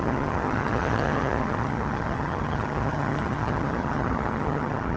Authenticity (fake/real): fake